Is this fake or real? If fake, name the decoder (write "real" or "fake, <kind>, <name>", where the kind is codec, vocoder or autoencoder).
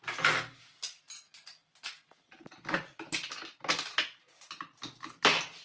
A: fake, vocoder, BigVGAN v2